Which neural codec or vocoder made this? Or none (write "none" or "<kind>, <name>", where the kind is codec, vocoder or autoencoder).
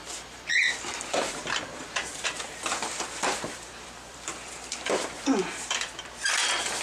vocoder, BigVGAN v2